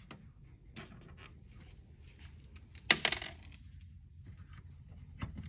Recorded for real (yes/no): yes